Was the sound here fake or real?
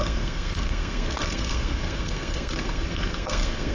fake